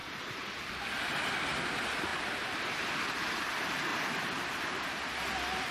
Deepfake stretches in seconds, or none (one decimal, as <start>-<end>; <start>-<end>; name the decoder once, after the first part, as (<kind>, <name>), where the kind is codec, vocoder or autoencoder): 0.0-1.6 (vocoder, BigVGAN v2); 3.9-4.6